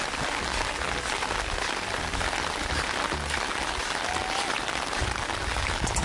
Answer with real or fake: real